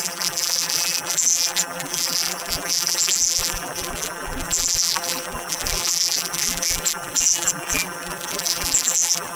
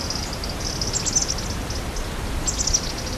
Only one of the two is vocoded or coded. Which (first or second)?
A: first